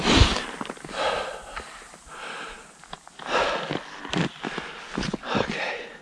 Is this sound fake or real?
real